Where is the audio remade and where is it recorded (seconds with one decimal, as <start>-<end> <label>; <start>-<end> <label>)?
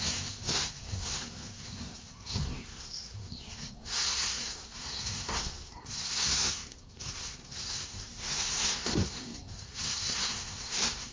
0.0-11.1 remade